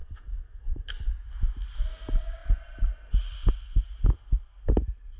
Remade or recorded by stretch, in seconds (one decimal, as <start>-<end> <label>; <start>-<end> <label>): 0.0-0.6 remade; 0.6-5.2 recorded